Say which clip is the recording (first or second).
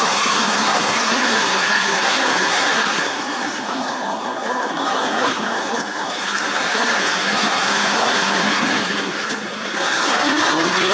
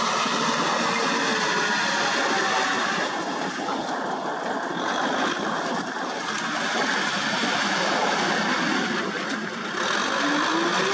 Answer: second